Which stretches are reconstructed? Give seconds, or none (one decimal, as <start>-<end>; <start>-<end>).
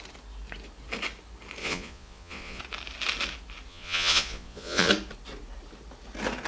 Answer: 1.6-2.6; 3.7-4.9